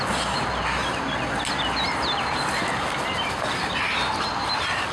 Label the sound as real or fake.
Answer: real